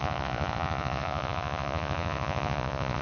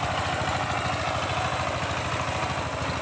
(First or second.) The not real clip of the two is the first